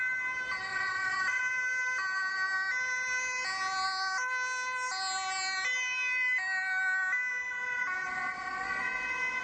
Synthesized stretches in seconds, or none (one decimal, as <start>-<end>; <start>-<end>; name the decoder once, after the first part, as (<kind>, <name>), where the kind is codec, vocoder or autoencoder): 0.7-1.4 (vocoder, Vocos)